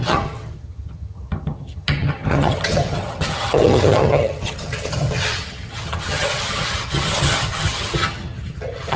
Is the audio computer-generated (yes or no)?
yes